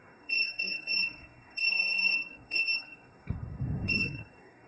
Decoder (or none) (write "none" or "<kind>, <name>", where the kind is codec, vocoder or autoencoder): codec, SNAC